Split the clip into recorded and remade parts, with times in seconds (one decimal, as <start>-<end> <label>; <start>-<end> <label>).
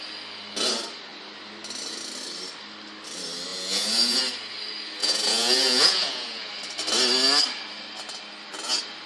0.0-3.5 recorded; 3.5-4.2 remade; 4.2-5.0 recorded; 5.0-6.5 remade; 6.5-9.1 recorded